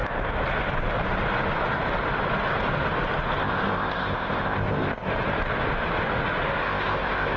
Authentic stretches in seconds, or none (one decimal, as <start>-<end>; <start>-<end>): 0.0-3.4; 5.1-6.6